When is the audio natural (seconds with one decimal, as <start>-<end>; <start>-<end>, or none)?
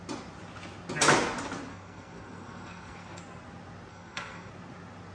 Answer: 0.0-1.7; 3.2-3.9; 4.5-5.1